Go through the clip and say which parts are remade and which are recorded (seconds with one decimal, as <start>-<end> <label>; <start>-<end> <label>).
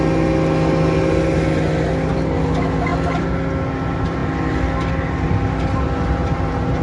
0.0-6.2 recorded; 6.2-6.8 remade